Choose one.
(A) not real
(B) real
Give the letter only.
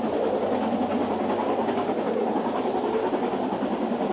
B